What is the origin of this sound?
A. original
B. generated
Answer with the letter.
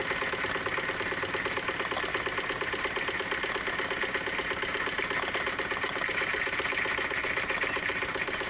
A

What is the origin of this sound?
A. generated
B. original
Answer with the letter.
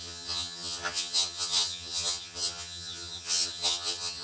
A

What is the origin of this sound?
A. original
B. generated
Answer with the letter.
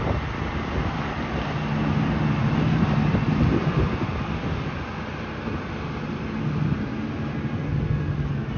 A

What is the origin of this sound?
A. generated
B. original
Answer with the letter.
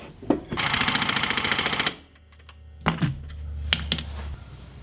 B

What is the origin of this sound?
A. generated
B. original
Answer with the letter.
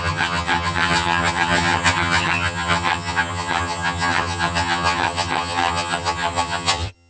A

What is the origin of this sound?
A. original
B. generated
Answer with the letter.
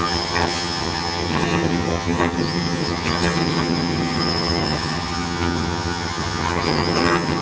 B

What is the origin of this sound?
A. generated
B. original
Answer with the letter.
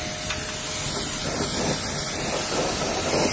B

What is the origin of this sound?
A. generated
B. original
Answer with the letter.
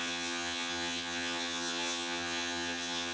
A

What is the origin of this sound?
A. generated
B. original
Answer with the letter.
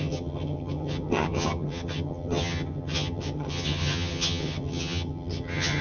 A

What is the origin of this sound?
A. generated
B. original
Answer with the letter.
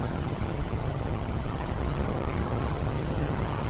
A